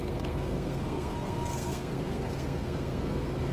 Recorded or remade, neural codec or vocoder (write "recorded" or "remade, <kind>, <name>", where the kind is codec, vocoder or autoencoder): remade, codec, SNAC